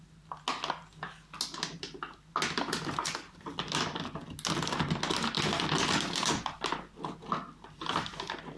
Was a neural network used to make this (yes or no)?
no